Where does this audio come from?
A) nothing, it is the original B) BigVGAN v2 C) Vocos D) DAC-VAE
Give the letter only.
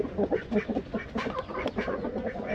C